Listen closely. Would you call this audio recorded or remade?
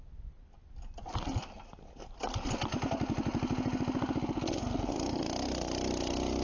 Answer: recorded